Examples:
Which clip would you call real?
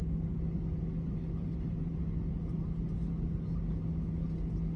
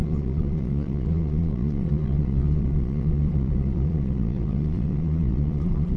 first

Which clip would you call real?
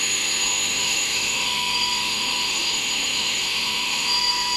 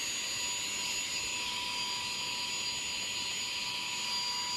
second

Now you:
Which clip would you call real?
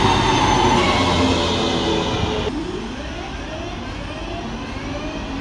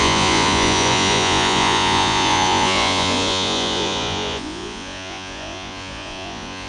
first